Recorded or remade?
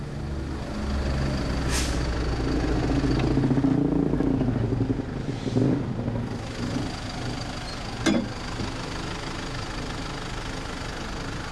recorded